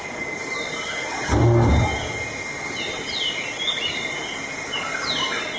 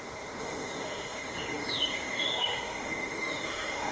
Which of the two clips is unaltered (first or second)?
first